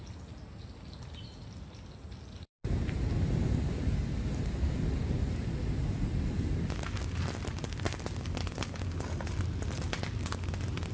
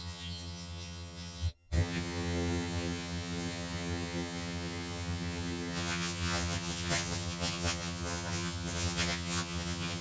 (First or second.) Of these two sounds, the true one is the first